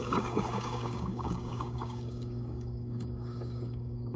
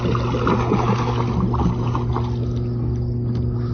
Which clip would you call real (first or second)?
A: second